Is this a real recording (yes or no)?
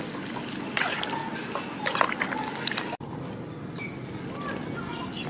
yes